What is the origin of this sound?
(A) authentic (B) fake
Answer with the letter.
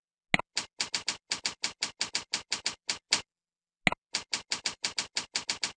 A